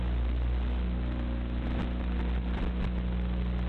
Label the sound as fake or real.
real